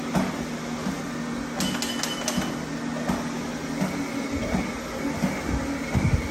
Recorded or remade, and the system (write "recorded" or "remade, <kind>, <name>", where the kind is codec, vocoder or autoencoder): recorded